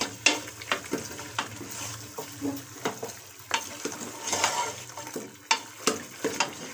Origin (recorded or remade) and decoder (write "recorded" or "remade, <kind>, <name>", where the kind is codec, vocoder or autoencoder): recorded